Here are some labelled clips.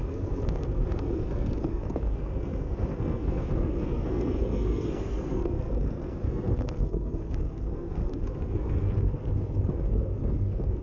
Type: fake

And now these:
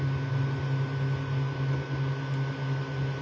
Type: real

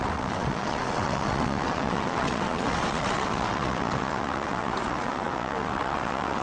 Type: fake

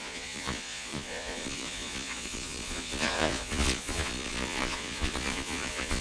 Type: fake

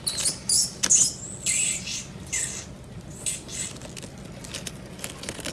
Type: real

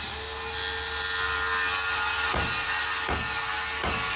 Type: real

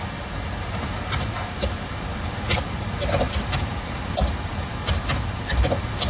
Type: real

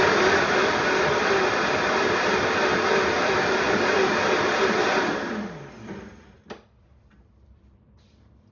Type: fake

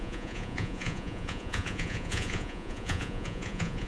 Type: fake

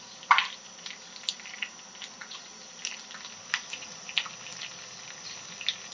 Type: real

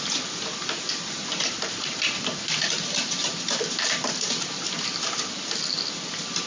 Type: real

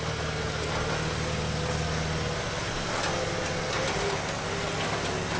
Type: real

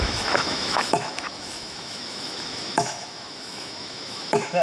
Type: fake